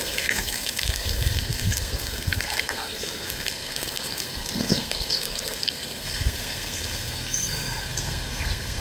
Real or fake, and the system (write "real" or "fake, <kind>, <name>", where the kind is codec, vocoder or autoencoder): fake, codec, SNAC